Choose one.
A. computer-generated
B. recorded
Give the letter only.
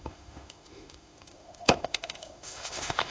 A